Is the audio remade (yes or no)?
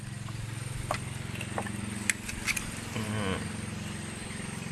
no